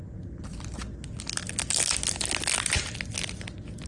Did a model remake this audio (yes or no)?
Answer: no